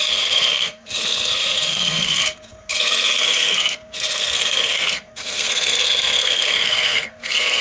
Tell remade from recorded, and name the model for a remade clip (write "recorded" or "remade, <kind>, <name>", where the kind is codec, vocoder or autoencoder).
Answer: remade, codec, SNAC